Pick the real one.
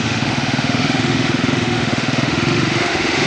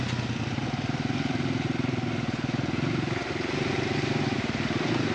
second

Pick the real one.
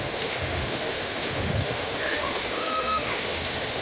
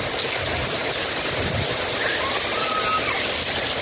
second